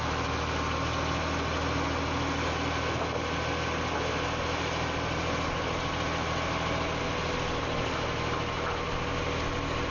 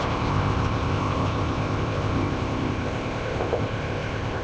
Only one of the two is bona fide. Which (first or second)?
first